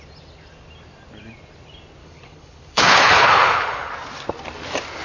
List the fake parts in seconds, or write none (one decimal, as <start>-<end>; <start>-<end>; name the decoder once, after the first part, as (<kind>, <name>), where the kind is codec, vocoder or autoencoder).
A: 2.0-3.9 (codec, HILCodec)